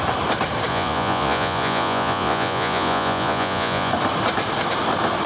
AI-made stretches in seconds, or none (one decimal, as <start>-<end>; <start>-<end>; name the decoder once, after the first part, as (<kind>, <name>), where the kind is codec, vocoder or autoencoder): 0.7-3.9 (vocoder, Vocos)